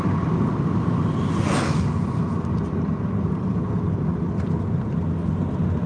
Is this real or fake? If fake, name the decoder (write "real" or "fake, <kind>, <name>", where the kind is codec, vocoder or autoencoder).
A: real